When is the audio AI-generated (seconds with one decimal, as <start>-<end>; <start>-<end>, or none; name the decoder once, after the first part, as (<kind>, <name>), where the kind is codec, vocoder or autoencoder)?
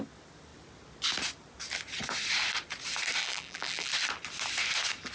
3.2-3.9 (vocoder, BigVGAN v2)